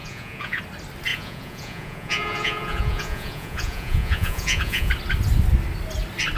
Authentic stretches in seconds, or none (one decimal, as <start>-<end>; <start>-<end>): 0.6-1.1; 4.9-6.4